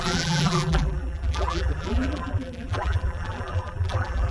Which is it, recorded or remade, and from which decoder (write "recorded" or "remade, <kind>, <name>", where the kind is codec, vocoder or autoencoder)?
remade, vocoder, BigVGAN v2